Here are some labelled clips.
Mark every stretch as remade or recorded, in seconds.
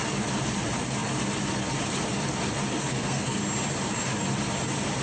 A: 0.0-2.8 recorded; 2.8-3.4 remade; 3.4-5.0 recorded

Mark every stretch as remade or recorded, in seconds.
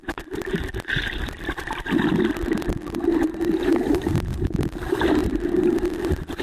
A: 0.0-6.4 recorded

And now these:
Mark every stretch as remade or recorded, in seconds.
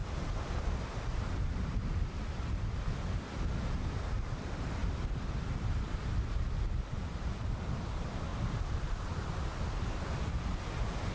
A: 0.0-11.1 recorded